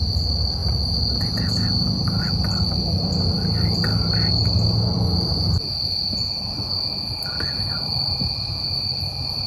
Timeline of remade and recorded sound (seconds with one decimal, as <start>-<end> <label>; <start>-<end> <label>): 0.0-9.5 recorded